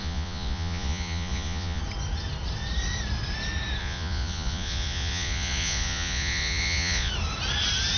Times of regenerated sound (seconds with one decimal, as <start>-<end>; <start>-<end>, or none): 0.0-1.8; 3.8-7.1